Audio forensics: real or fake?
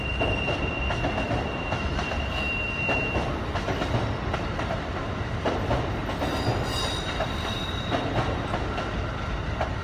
fake